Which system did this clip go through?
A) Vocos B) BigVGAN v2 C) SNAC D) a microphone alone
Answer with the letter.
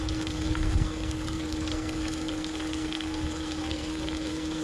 C